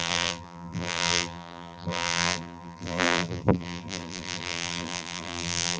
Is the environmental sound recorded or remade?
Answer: remade